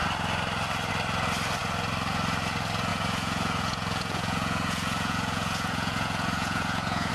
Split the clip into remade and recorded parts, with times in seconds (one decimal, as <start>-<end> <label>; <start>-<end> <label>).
0.0-2.9 recorded; 2.9-7.1 remade

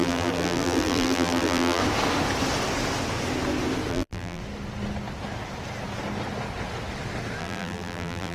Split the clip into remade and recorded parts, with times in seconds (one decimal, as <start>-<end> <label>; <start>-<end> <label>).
0.0-1.8 remade; 1.8-3.9 recorded; 3.9-4.4 remade; 4.4-7.4 recorded; 7.4-8.3 remade

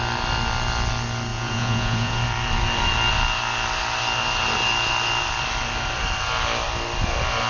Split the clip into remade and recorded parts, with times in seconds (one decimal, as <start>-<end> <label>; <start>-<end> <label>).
0.0-1.3 recorded; 1.3-2.2 remade; 2.2-7.5 recorded

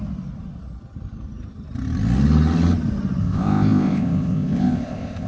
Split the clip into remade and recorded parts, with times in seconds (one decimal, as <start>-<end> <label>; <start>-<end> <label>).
0.0-3.2 recorded; 3.2-5.3 remade

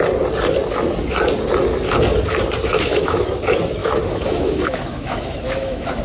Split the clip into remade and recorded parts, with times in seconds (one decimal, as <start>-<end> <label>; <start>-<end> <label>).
0.0-2.7 recorded; 2.7-3.3 remade; 3.3-3.8 recorded; 3.8-6.0 remade

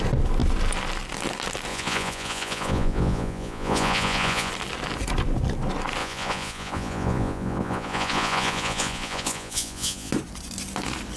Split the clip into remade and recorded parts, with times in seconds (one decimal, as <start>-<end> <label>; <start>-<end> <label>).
0.0-1.7 recorded; 1.7-4.5 remade; 4.5-6.0 recorded; 6.0-10.1 remade; 10.1-11.2 recorded